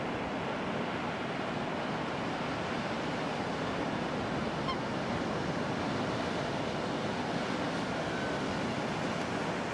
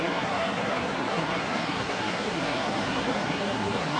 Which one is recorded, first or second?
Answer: first